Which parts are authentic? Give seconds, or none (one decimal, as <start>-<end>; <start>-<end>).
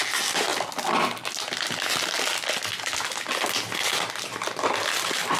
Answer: 0.0-5.4